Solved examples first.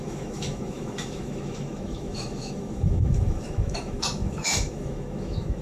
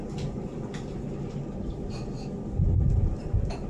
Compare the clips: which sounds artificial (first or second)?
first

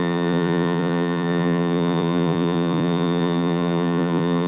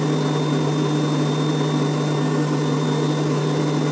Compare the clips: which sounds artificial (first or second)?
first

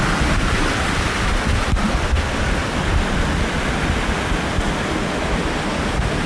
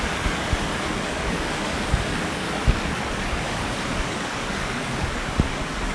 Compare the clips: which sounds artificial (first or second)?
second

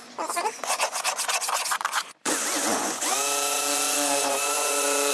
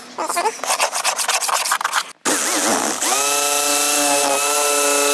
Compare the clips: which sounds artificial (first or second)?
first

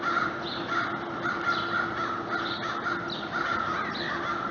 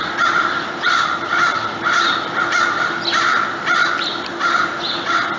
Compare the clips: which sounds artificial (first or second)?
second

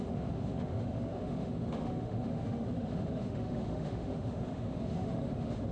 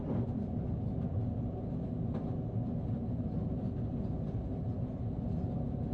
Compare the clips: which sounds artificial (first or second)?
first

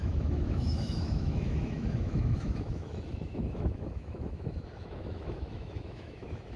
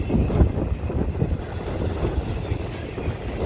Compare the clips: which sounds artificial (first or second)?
first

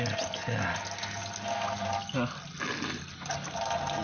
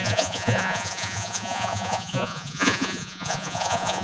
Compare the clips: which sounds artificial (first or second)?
second